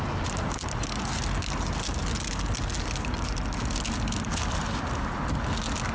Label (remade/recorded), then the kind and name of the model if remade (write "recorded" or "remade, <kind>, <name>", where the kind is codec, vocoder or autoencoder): recorded